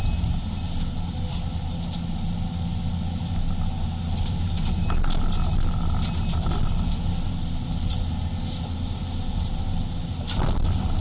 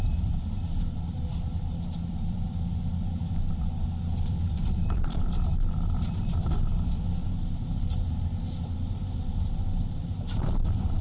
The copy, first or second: second